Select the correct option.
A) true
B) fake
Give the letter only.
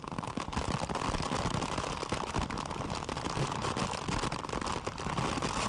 A